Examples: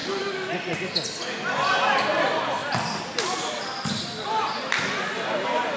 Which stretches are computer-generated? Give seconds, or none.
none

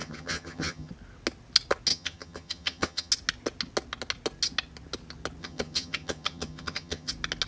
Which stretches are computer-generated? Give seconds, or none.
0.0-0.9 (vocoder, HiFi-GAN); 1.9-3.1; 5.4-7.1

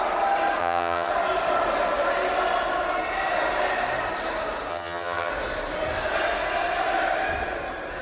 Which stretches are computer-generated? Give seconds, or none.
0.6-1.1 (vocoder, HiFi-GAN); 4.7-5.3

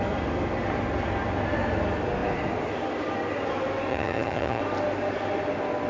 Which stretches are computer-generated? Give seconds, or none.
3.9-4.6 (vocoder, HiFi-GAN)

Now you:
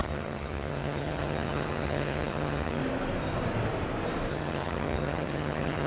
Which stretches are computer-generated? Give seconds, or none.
0.0-2.8 (vocoder, HiFi-GAN); 4.3-5.9

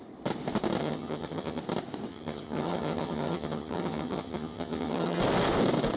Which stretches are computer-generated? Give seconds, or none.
0.8-1.6 (vocoder, HiFi-GAN); 2.1-5.2